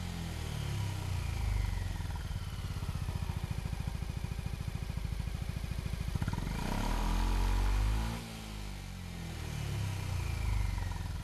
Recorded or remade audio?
recorded